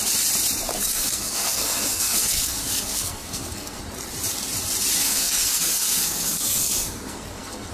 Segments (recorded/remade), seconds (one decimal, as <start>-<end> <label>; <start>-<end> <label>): 0.0-0.7 recorded; 0.7-3.8 remade; 3.8-5.0 recorded; 5.0-7.7 remade

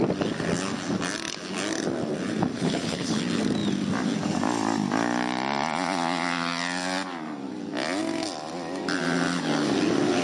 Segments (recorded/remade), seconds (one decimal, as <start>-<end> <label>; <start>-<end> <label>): 0.0-2.5 recorded; 2.5-3.2 remade; 3.2-10.2 recorded

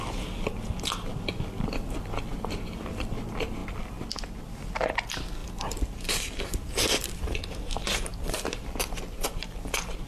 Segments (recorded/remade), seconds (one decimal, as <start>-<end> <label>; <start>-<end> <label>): 0.0-2.3 recorded; 2.3-2.9 remade; 2.9-5.4 recorded; 5.4-7.2 remade; 7.2-8.1 recorded; 8.1-9.7 remade; 9.7-10.1 recorded

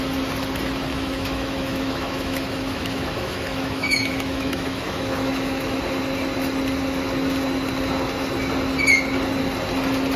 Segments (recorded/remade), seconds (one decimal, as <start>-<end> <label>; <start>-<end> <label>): 0.0-0.9 recorded; 0.9-5.8 remade; 5.8-10.2 recorded